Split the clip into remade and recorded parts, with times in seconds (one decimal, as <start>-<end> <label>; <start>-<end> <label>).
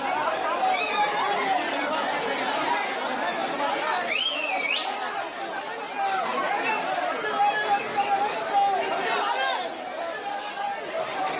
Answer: 0.0-11.4 recorded